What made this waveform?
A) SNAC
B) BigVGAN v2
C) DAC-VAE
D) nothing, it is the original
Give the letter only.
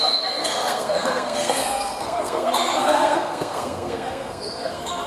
A